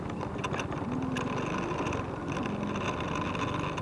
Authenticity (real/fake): real